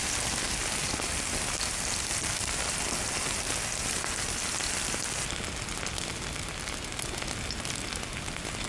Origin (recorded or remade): recorded